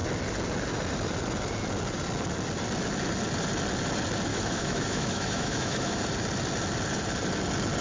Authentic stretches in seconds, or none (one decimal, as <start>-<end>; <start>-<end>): 0.0-4.3; 6.0-7.8